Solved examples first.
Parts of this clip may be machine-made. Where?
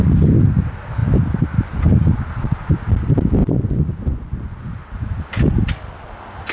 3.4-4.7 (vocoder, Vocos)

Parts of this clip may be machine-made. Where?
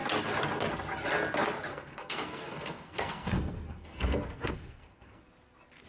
1.7-5.2 (codec, SNAC)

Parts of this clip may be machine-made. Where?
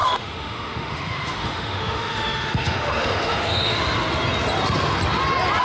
0.0-3.8 (autoencoder, DAC-VAE)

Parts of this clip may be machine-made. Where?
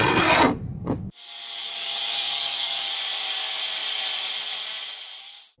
1.6-2.9 (codec, DAC)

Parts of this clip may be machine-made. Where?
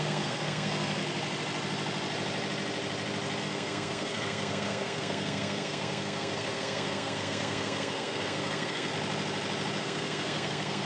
0.0-1.0 (codec, SNAC); 3.4-8.9; 9.8-10.9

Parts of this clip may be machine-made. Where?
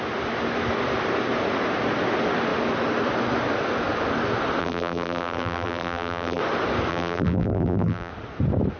4.6-6.4 (vocoder, BigVGAN v2); 6.9-8.1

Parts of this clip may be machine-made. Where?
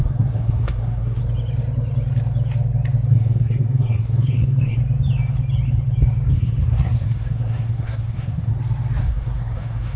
0.0-1.2 (codec, SNAC); 3.1-4.8; 6.3-8.5; 9.0-10.0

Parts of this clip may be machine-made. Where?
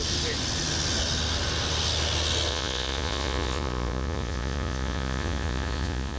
2.5-6.2 (vocoder, Vocos)